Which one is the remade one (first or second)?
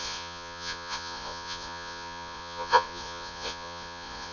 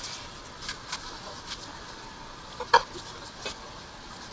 first